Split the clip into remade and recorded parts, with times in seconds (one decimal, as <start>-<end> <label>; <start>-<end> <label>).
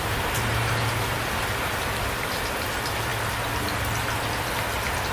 0.0-5.1 recorded